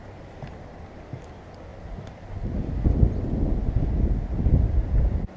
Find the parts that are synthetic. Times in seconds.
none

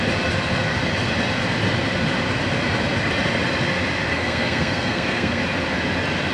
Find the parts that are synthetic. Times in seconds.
4.1-5.4 (codec, SNAC)

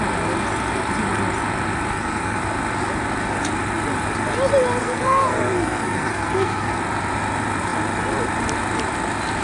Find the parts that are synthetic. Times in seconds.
1.9-2.4 (codec, SNAC); 4.8-6.8